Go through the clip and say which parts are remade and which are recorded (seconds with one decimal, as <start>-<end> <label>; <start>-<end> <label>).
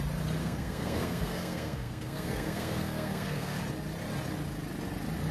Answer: 0.0-0.4 recorded; 0.4-3.6 remade; 3.6-5.3 recorded